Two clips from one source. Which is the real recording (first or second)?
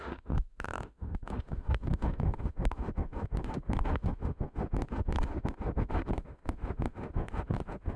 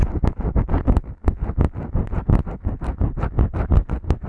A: second